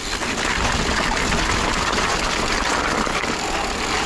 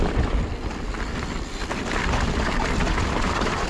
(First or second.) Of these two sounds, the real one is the first